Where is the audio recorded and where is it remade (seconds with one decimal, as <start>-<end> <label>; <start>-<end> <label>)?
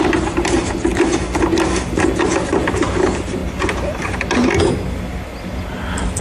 0.0-0.9 remade; 0.9-2.5 recorded; 2.5-3.4 remade; 3.4-6.2 recorded